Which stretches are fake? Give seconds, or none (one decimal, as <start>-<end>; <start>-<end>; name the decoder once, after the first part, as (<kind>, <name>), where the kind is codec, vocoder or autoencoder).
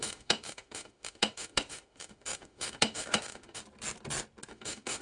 0.0-3.6 (autoencoder, DAC-VAE); 4.5-5.0